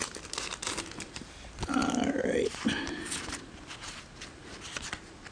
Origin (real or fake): real